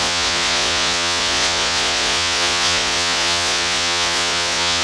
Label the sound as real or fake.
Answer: fake